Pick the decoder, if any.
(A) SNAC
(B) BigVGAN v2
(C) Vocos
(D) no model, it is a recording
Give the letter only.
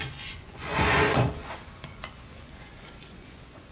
C